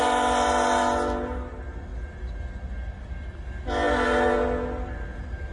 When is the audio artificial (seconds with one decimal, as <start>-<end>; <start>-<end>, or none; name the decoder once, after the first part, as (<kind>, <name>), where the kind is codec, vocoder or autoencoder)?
none